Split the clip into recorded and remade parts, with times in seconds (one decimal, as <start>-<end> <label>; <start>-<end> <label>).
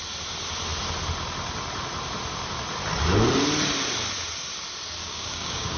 0.0-5.0 recorded; 5.0-5.8 remade